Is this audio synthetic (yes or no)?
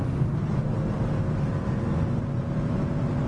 no